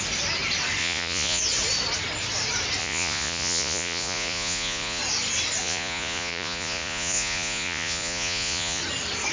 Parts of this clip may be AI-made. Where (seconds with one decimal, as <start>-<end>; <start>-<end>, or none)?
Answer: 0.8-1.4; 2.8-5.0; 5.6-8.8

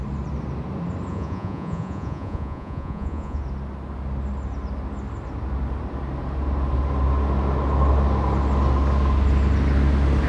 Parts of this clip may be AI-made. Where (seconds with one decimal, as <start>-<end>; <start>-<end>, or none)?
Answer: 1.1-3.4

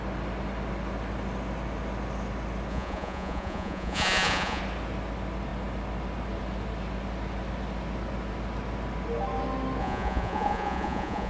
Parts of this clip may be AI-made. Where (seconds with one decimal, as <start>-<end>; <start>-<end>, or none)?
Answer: 2.7-4.6; 9.8-11.3